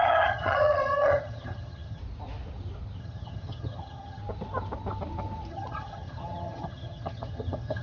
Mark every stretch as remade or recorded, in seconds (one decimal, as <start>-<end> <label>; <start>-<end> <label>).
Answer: 0.0-2.0 remade; 2.0-3.0 recorded; 3.0-4.2 remade; 4.2-5.5 recorded; 5.5-7.8 remade